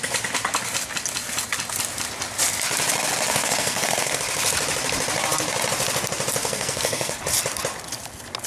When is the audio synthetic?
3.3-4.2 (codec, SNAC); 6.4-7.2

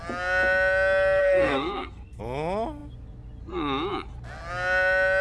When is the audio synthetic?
1.2-2.2 (codec, SNAC)

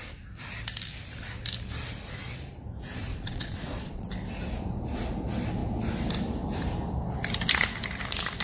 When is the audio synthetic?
3.1-4.1 (vocoder, Vocos)

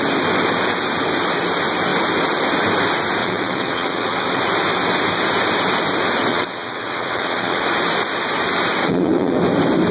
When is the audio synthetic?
3.2-4.4 (vocoder, WaveNeXt); 6.3-7.7; 8.8-9.4